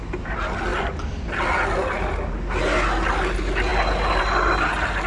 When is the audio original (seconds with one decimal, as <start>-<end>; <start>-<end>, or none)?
0.0-5.1